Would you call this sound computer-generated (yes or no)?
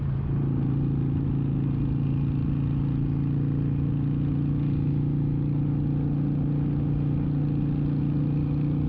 no